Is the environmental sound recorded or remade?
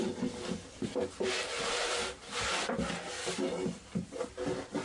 recorded